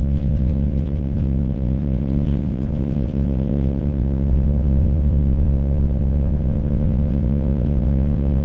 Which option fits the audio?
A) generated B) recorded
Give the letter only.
A